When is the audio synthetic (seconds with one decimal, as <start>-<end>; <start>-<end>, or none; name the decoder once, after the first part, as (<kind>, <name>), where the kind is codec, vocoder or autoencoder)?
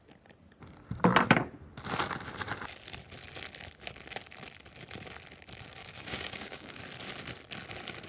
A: 5.8-6.8 (codec, DAC)